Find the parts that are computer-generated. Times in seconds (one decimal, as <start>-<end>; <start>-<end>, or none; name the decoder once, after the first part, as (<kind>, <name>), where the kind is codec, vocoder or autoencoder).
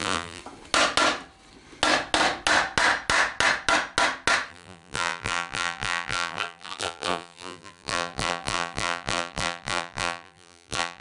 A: 0.0-0.4 (vocoder, BigVGAN v2); 4.5-11.0